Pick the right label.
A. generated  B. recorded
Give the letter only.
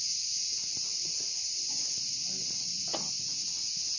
B